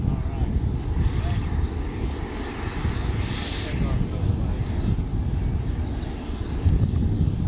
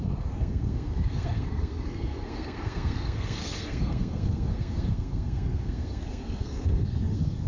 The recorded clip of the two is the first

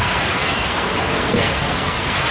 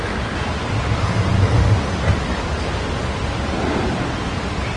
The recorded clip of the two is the second